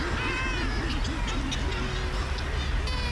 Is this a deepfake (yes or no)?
no